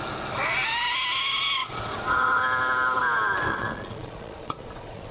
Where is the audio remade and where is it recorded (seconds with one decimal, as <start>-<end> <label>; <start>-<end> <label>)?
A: 0.0-1.6 recorded; 1.6-2.4 remade; 2.4-3.5 recorded; 3.5-5.1 remade